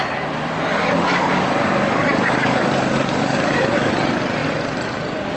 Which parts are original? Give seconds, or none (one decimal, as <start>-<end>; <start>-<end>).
0.0-0.7; 3.9-5.4